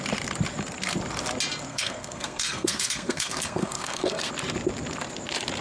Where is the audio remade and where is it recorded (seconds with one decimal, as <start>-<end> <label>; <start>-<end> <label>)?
0.0-1.7 recorded; 1.7-4.3 remade; 4.3-5.6 recorded